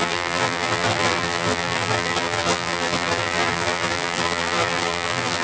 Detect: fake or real fake